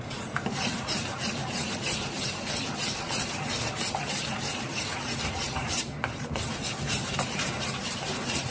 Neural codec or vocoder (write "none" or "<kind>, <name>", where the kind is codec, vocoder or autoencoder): vocoder, BigVGAN v2